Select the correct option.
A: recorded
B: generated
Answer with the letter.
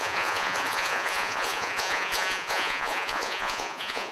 B